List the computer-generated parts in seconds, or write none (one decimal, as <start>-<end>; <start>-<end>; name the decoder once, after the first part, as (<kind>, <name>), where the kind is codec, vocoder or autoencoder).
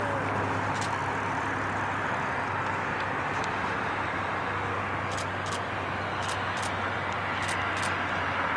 none